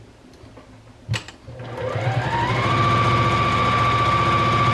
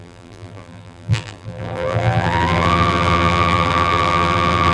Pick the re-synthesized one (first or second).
second